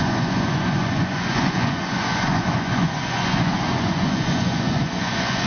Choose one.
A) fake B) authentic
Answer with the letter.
A